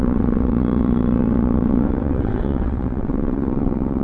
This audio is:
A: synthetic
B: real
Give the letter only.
A